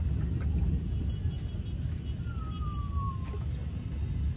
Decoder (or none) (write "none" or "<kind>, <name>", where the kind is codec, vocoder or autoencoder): none